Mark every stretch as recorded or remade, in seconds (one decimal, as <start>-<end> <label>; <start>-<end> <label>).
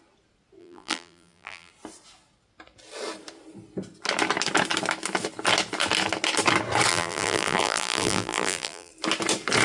0.0-0.6 recorded; 0.6-1.7 remade; 1.7-6.9 recorded; 6.9-8.9 remade; 8.9-9.6 recorded